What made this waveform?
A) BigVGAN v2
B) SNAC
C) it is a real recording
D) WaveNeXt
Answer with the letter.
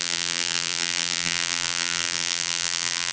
A